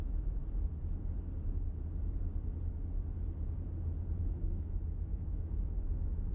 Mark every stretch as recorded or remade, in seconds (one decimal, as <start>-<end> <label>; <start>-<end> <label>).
0.0-0.4 remade; 0.4-4.2 recorded; 4.2-6.3 remade